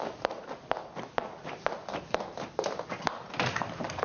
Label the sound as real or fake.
real